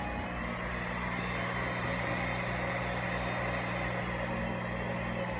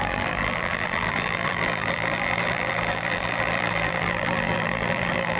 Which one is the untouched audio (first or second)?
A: first